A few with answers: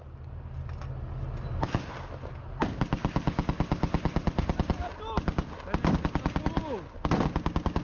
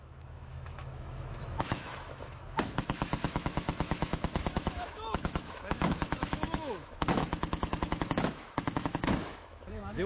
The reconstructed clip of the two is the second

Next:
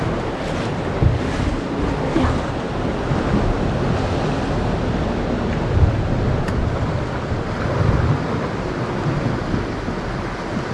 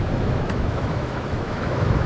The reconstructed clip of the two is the second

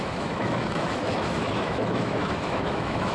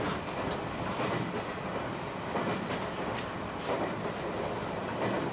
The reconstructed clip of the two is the first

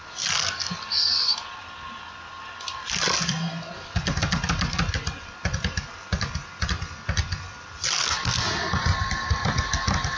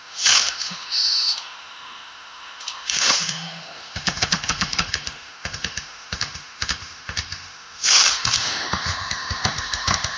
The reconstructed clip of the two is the second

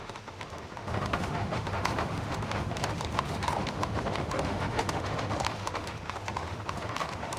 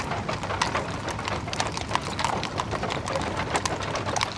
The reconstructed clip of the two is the first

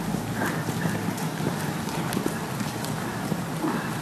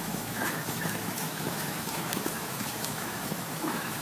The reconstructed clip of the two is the second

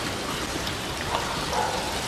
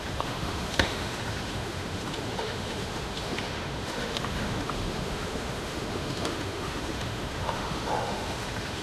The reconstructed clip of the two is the second